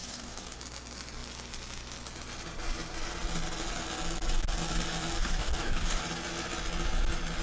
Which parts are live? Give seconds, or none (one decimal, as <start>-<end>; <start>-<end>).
0.6-5.2; 6.0-7.4